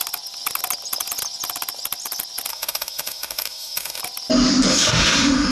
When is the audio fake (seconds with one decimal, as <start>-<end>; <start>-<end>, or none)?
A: 2.5-4.0; 4.7-5.5